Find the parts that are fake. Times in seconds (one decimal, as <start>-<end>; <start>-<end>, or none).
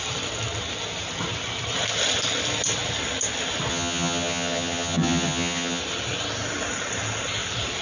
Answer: 3.7-5.8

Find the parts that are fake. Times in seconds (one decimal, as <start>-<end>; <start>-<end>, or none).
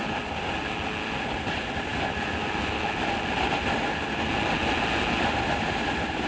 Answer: none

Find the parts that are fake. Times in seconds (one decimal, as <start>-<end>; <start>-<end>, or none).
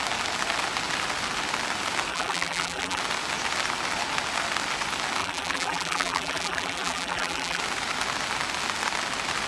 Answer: 2.1-3.0; 5.2-7.6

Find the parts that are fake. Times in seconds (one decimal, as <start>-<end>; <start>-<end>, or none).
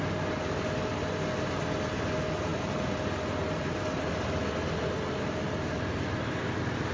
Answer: none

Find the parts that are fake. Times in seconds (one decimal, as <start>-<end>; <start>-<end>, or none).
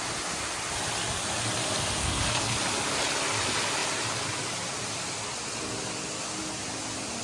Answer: 2.0-2.5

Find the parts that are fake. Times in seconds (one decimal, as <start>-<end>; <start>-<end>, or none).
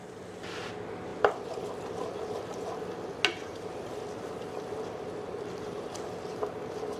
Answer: none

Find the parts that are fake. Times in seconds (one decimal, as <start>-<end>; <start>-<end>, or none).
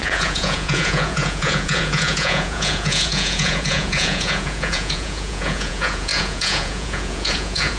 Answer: 0.0-7.8